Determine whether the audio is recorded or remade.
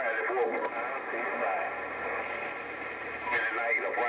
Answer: recorded